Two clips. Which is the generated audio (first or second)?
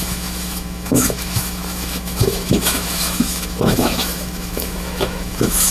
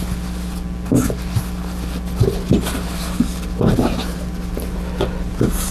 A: first